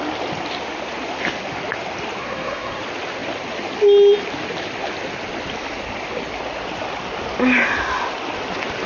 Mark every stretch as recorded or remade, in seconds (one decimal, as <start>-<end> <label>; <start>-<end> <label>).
0.0-2.2 recorded; 2.2-2.8 remade; 2.8-8.9 recorded